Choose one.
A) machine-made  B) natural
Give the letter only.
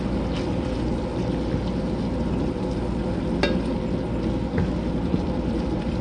B